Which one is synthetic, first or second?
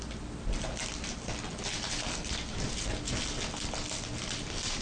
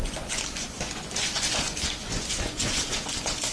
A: second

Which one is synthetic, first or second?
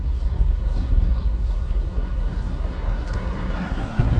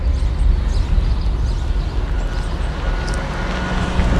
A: first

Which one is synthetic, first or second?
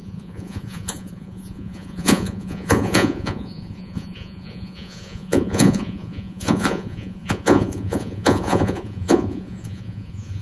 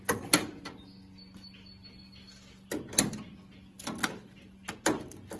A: first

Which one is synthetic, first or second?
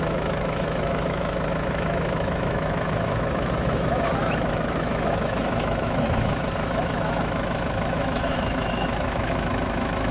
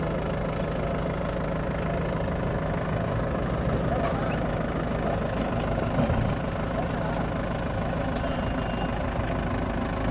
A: first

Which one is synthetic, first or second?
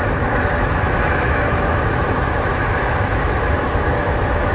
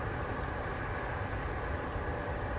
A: first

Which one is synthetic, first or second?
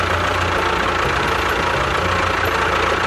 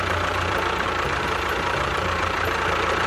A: second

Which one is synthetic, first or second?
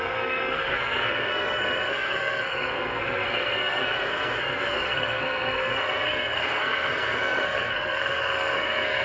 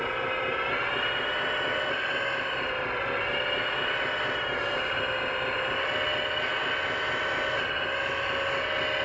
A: first